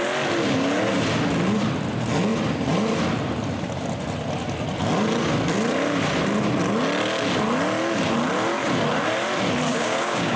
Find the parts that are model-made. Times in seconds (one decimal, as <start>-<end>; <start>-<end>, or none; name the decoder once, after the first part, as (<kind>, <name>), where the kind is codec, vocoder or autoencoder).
9.7-10.4 (codec, DAC)